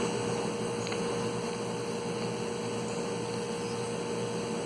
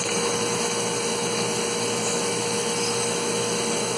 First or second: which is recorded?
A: first